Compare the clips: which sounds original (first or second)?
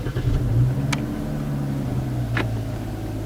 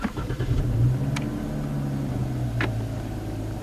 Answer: first